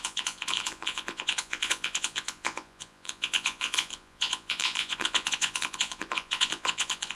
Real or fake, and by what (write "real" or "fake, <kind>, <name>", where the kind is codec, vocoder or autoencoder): fake, vocoder, Vocos